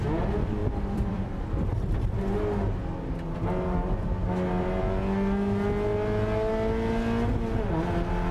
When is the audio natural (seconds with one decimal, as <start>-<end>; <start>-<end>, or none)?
0.0-0.6; 2.2-8.3